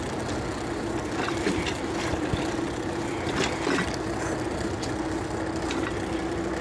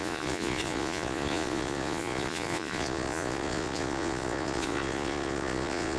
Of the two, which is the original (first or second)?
first